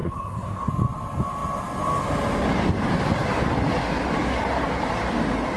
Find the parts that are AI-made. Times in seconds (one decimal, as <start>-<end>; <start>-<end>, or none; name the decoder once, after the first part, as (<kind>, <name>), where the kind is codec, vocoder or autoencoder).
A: 0.0-0.7 (codec, SNAC)